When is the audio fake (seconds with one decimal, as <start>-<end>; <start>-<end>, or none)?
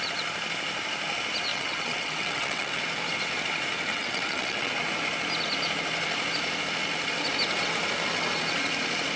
1.5-2.8; 3.9-4.7